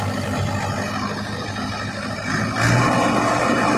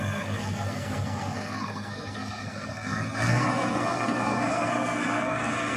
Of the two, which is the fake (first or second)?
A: second